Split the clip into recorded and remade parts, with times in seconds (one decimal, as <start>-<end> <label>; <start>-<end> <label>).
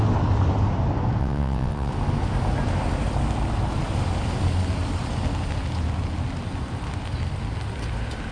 0.0-1.2 recorded; 1.2-1.9 remade; 1.9-8.3 recorded